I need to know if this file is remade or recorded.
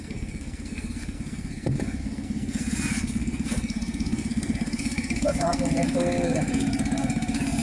remade